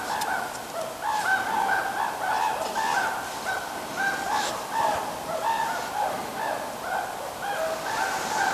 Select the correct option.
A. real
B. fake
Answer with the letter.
A